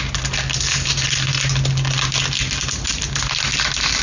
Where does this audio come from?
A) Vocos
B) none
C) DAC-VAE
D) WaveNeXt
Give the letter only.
B